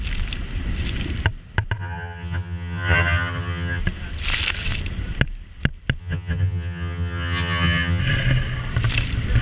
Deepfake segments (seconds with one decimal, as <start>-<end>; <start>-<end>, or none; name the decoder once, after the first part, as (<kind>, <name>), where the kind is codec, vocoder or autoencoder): 1.8-3.8 (vocoder, HiFi-GAN); 6.0-8.0